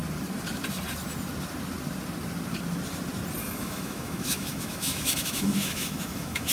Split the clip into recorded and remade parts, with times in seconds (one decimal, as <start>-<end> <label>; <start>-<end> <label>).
0.0-3.4 recorded; 3.4-6.5 remade